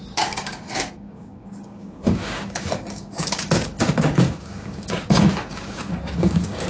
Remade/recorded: remade